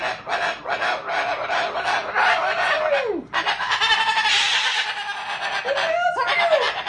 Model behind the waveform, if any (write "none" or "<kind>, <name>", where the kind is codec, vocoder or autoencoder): none